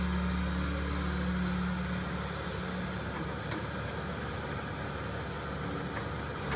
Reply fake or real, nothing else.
real